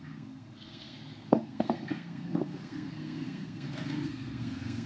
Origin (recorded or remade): remade